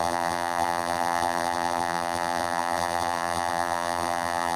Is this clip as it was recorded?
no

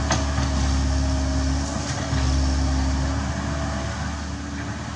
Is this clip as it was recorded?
yes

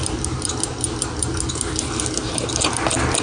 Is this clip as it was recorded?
yes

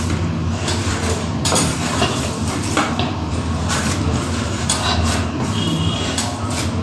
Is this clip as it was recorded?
no